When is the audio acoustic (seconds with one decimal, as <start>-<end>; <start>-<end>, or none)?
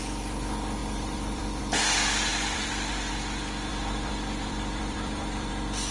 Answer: 0.0-0.8; 1.6-2.3; 3.1-3.7; 5.5-5.9